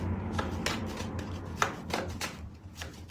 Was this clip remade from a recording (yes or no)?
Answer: yes